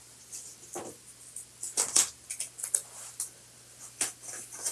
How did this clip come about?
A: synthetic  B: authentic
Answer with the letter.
B